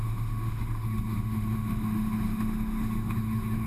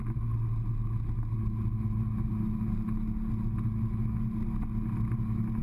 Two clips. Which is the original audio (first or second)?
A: second